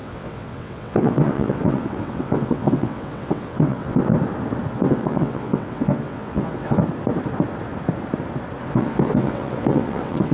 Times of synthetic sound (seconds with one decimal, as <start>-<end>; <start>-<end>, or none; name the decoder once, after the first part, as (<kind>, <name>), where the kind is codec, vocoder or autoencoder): 0.0-4.1 (vocoder, WaveNeXt); 4.7-6.8; 8.6-10.3